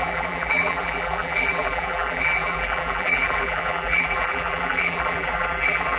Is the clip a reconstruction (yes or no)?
yes